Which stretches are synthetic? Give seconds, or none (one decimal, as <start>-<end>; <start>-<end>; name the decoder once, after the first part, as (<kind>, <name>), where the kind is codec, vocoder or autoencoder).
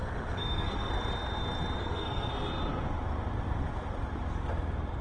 0.0-0.9 (codec, SNAC); 1.8-2.3